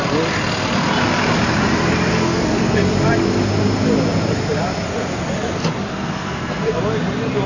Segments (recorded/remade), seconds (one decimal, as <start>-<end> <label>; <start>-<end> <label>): 0.0-2.1 recorded; 2.1-2.7 remade; 2.7-5.9 recorded; 5.9-6.8 remade; 6.8-7.5 recorded